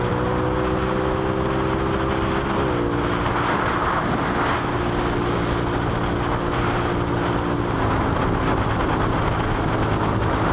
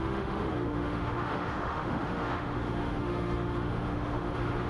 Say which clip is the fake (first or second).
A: second